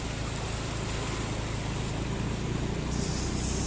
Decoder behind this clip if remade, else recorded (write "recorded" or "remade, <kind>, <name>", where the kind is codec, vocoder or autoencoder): recorded